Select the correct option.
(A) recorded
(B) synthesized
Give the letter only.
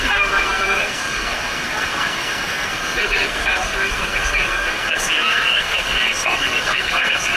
B